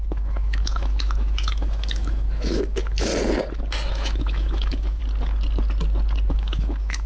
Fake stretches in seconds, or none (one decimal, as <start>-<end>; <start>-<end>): 0.0-3.1; 3.9-5.0; 6.3-7.1